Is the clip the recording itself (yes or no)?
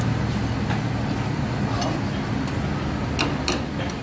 yes